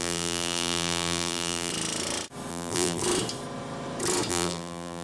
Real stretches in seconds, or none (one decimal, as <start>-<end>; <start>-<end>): 1.7-2.5; 3.0-4.3